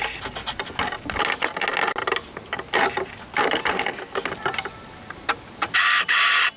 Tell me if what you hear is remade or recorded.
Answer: recorded